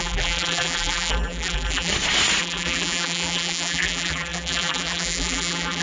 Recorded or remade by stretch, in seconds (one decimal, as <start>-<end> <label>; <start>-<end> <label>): 0.0-1.9 remade; 1.9-2.4 recorded; 2.4-5.8 remade